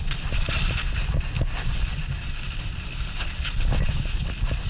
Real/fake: real